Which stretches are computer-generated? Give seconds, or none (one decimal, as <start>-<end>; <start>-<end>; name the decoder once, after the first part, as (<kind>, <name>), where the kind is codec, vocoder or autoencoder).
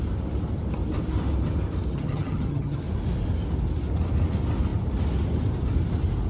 1.9-2.8 (vocoder, HiFi-GAN)